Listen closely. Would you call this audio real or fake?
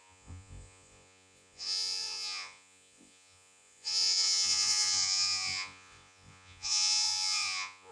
fake